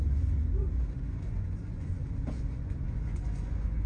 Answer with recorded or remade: remade